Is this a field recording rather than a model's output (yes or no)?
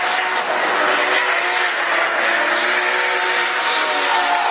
yes